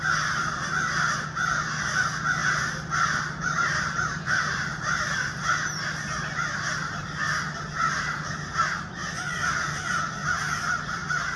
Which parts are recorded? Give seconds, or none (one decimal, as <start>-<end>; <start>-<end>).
0.0-11.4